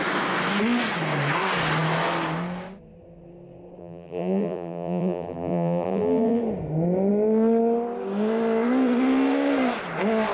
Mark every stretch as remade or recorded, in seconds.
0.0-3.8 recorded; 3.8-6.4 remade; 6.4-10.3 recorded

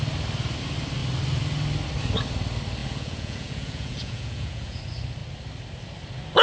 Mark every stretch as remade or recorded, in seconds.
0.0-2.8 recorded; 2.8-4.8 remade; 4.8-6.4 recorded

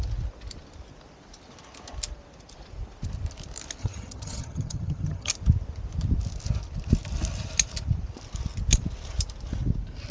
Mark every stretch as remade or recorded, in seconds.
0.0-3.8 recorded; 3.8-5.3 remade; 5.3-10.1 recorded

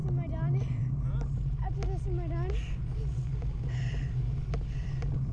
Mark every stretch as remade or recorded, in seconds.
0.0-5.3 recorded